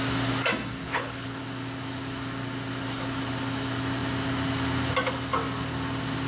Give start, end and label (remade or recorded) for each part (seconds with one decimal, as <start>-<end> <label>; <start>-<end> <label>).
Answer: 0.0-0.8 recorded; 0.8-1.4 remade; 1.4-6.3 recorded